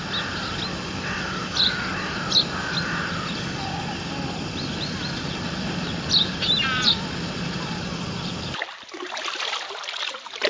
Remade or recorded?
recorded